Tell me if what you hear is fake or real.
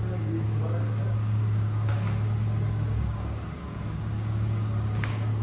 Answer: fake